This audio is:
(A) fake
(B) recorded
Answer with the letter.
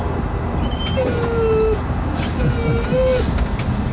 B